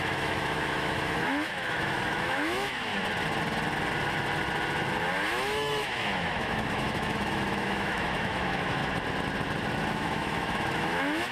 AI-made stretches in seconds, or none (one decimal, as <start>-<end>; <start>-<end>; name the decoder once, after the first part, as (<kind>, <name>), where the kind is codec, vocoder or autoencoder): 0.0-2.9 (autoencoder, DAC-VAE); 5.3-8.8; 9.9-11.3